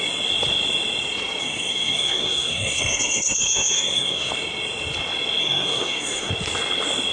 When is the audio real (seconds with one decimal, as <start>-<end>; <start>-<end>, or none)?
0.0-1.4; 4.3-5.4; 6.3-7.1